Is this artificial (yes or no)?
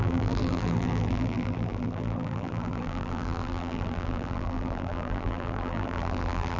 yes